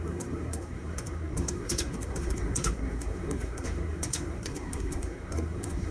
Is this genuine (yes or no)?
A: no